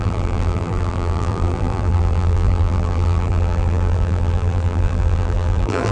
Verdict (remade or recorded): remade